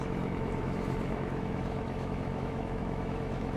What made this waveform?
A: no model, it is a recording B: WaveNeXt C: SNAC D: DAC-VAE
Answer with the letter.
D